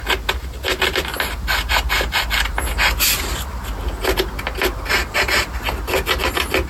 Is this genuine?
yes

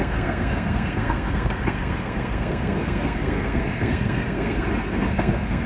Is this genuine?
no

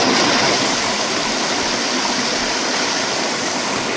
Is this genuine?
yes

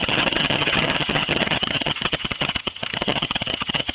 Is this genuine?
no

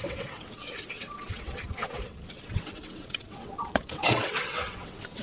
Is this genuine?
no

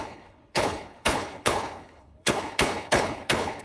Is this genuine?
no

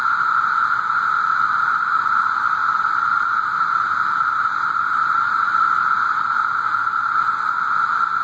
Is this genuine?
yes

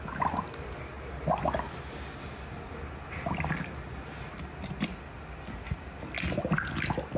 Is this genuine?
yes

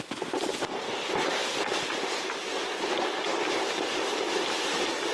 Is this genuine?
yes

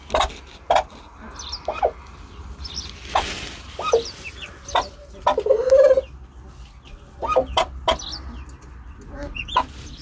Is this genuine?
yes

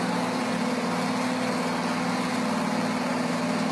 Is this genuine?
yes